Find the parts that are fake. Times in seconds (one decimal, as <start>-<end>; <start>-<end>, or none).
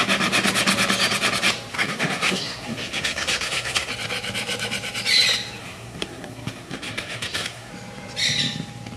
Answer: 1.7-3.9; 5.6-7.7